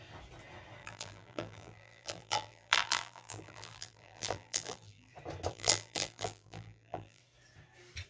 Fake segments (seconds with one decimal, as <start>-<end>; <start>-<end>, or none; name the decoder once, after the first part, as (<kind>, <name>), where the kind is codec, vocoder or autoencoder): 0.8-5.1 (vocoder, BigVGAN v2); 5.5-7.2